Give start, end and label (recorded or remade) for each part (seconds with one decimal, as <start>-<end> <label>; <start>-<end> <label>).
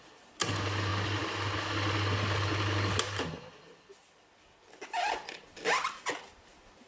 0.0-6.9 recorded